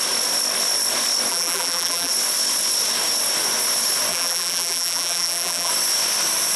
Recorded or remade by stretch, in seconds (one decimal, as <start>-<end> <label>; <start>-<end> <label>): 0.0-1.3 recorded; 1.3-2.1 remade; 2.1-4.1 recorded; 4.1-5.7 remade; 5.7-6.6 recorded